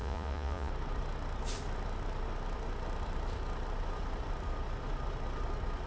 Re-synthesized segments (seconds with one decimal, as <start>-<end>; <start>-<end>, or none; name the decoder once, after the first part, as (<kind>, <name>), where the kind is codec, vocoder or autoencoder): 0.0-0.7 (vocoder, Vocos)